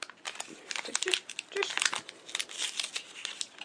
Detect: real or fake real